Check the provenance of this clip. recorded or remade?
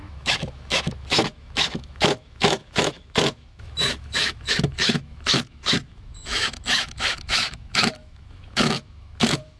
remade